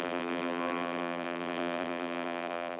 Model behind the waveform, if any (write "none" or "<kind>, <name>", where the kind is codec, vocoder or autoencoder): vocoder, BigVGAN v2